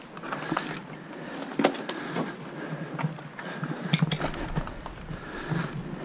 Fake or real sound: real